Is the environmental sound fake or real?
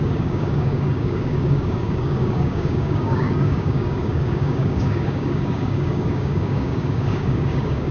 fake